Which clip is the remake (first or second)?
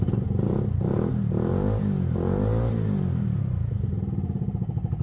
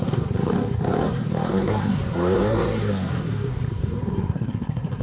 second